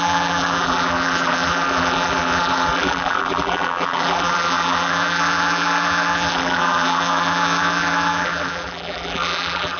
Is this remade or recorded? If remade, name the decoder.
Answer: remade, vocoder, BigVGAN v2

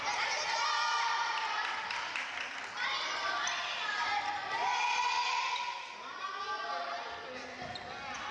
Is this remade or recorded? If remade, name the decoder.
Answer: recorded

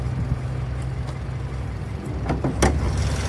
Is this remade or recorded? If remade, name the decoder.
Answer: recorded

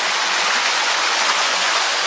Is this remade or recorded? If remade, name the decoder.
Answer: remade, vocoder, Vocos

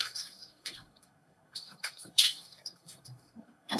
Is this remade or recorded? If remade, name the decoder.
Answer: remade, codec, SNAC